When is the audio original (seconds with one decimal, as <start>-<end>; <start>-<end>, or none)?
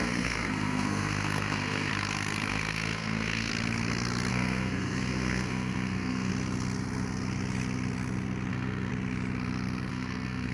1.9-2.5; 3.5-4.3; 6.3-8.5; 8.9-9.9